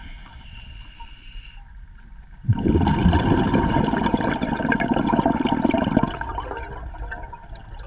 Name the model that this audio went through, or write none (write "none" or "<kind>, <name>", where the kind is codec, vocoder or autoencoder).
none